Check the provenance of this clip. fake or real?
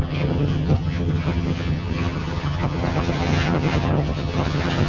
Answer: fake